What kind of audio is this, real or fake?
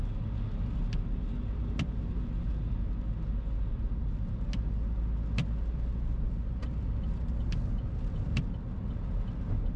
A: real